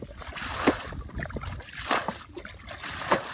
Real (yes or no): yes